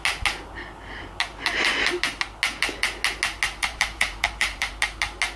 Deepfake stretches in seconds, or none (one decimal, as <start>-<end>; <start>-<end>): 3.6-4.7